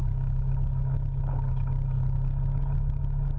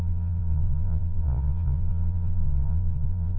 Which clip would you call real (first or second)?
first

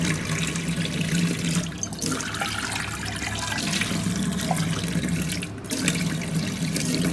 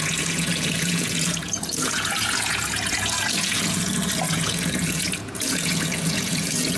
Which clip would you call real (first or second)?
first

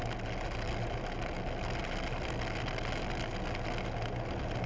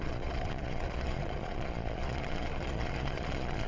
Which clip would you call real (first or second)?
first